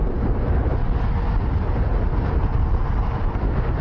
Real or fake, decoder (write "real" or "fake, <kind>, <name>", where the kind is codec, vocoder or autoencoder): real